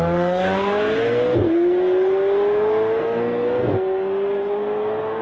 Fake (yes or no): yes